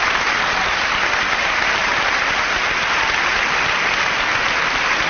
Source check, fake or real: real